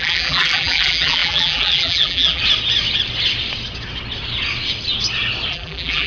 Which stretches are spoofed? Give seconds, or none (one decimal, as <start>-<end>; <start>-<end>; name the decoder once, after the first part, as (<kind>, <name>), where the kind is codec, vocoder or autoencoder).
0.0-2.4 (vocoder, BigVGAN v2); 5.5-6.1